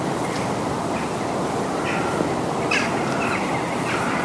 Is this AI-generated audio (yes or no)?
no